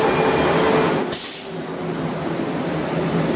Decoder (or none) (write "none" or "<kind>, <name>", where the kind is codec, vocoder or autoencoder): none